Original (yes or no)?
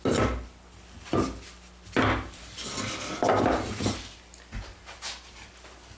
yes